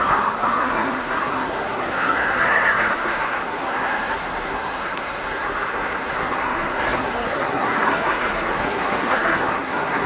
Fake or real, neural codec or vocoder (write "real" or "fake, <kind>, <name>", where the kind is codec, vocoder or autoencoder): fake, codec, SNAC